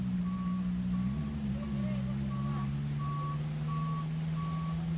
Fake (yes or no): no